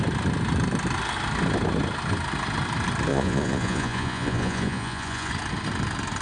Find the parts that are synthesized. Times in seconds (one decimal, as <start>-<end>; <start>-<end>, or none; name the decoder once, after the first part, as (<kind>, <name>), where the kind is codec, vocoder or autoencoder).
3.1-5.3 (vocoder, Vocos)